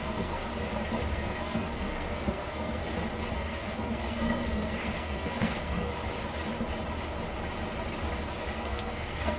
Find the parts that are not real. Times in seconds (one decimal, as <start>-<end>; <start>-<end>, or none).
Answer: 0.0-0.5; 1.1-2.8; 3.3-5.9; 8.5-9.4